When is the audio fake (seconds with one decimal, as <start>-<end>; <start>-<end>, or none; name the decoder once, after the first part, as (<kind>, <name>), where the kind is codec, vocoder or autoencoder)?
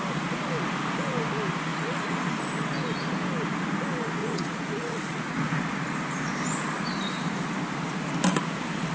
1.7-2.4 (vocoder, Vocos); 4.2-5.5